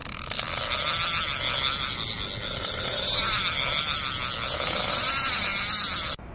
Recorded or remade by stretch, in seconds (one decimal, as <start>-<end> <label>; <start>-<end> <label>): 0.0-6.3 recorded

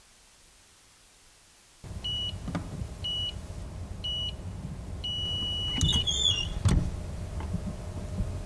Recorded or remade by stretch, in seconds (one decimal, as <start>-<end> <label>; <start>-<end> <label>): 0.0-5.9 recorded; 5.9-6.6 remade; 6.6-8.5 recorded